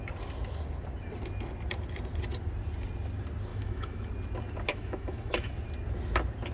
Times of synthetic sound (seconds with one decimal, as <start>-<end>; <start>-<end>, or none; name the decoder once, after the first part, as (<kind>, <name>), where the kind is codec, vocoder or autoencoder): 3.5-4.1 (autoencoder, DAC-VAE); 4.7-5.5